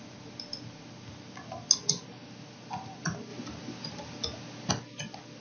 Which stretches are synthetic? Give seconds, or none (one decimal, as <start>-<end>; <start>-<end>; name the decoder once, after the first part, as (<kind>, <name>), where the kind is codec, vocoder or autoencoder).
none